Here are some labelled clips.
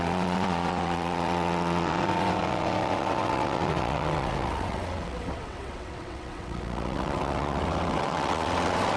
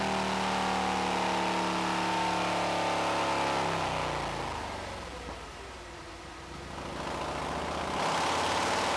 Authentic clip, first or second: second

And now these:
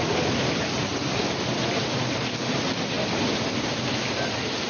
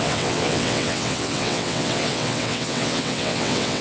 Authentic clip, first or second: first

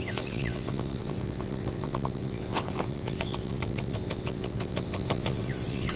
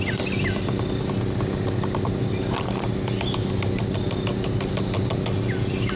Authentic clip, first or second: second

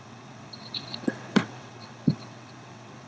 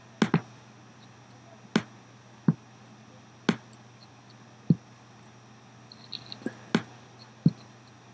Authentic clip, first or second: second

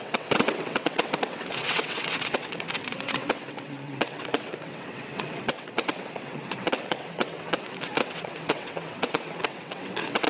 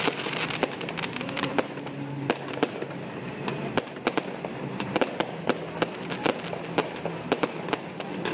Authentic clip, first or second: second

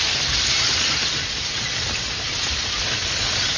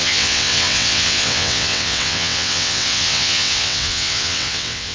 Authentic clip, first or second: first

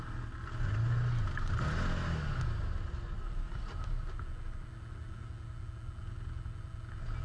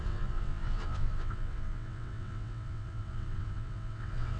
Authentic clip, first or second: first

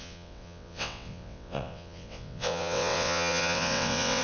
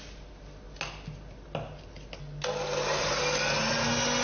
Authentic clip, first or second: second